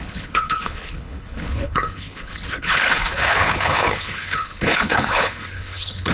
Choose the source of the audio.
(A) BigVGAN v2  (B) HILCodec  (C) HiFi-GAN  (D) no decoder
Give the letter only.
B